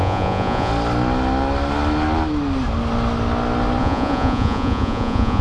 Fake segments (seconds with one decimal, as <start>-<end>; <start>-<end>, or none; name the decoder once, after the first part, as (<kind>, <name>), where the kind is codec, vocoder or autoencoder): 0.0-0.7 (vocoder, Vocos); 3.8-5.4